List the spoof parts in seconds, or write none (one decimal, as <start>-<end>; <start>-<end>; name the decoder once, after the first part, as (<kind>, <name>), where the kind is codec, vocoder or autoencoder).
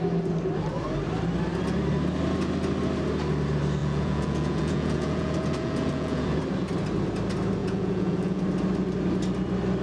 3.8-6.4 (vocoder, Vocos); 7.6-8.4